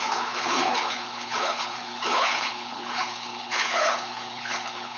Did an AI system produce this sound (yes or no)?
yes